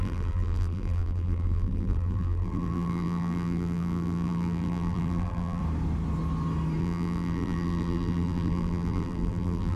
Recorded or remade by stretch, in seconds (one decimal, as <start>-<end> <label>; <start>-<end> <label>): 0.0-5.6 remade; 5.6-6.8 recorded; 6.8-9.8 remade